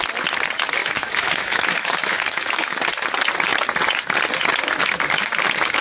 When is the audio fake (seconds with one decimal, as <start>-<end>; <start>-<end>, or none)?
0.8-2.8